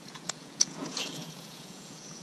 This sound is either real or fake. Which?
fake